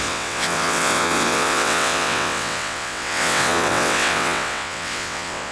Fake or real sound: fake